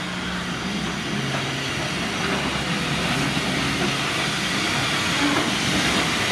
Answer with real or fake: real